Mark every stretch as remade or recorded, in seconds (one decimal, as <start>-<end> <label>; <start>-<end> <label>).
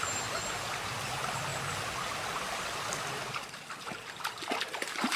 0.0-5.2 recorded